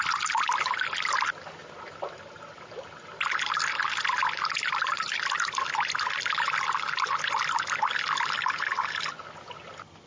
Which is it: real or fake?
real